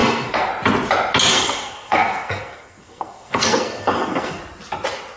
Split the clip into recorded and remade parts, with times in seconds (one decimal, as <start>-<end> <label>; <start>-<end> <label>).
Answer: 0.0-0.5 remade; 0.5-1.3 recorded; 1.3-4.4 remade; 4.4-5.2 recorded